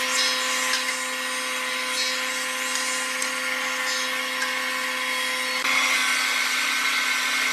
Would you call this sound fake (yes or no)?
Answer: no